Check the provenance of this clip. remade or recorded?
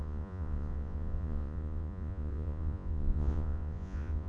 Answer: remade